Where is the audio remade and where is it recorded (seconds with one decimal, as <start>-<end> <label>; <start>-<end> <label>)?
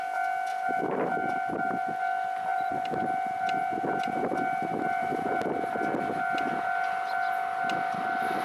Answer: 0.0-0.5 recorded; 0.5-1.6 remade; 1.6-2.5 recorded; 2.5-6.0 remade; 6.0-8.4 recorded